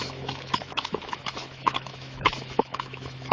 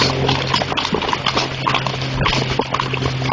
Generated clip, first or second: first